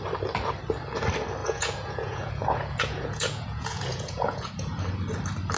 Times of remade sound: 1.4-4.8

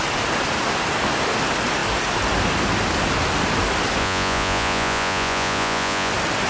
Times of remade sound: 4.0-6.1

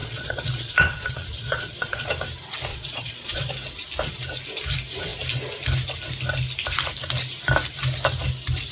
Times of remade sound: 0.0-2.1; 2.7-3.5